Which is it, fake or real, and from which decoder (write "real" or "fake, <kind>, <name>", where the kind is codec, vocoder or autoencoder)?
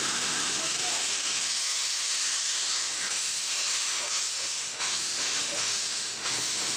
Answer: fake, autoencoder, DAC-VAE